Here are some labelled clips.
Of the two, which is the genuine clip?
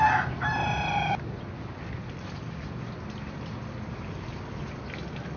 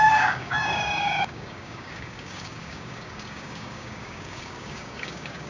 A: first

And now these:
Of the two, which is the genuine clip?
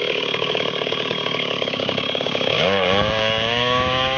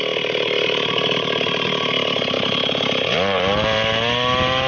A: second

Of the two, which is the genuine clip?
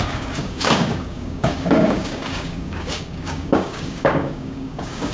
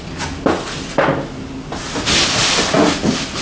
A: second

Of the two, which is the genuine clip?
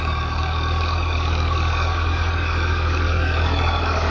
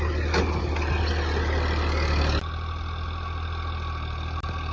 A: second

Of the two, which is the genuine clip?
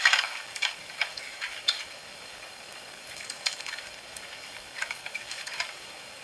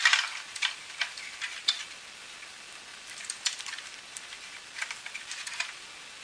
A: second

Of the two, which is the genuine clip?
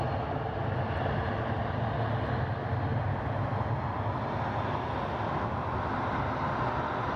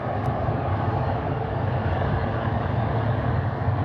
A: first